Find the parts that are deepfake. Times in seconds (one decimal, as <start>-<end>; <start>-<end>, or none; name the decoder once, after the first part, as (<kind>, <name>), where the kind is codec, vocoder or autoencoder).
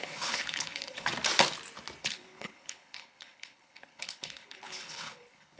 0.0-1.1 (codec, HILCodec); 2.0-5.6